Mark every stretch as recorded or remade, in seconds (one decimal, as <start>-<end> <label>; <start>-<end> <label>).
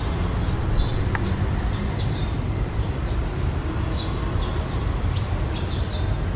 0.0-6.4 recorded